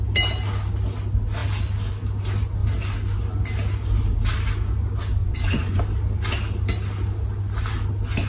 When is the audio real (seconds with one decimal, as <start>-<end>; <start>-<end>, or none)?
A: 0.0-5.2; 5.8-8.3